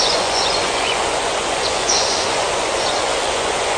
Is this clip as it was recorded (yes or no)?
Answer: no